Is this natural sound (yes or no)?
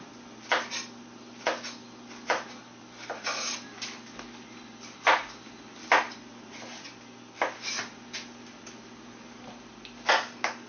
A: yes